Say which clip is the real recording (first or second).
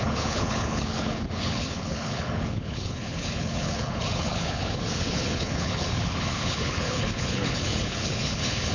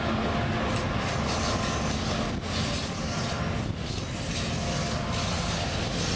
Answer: second